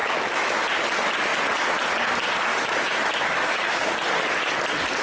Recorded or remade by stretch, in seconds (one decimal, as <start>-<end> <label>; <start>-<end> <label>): 0.0-0.6 remade; 0.6-2.5 recorded; 2.5-3.9 remade; 3.9-5.0 recorded